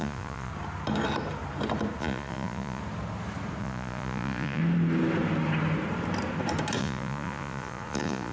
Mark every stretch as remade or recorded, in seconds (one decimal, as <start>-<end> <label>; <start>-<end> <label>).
0.0-0.5 remade; 0.5-2.0 recorded; 2.0-2.8 remade; 2.8-3.6 recorded; 3.6-4.6 remade; 4.6-6.8 recorded; 6.8-8.3 remade